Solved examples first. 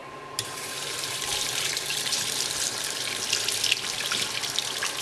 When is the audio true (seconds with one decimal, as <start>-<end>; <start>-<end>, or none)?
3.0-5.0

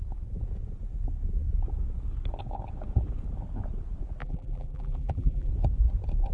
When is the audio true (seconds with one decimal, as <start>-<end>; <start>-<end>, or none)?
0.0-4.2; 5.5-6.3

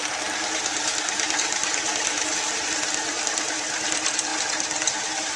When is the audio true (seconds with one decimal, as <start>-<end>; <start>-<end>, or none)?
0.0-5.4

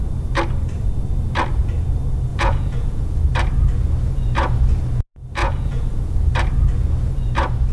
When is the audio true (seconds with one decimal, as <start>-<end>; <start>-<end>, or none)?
0.0-2.3; 3.2-5.4; 6.3-7.7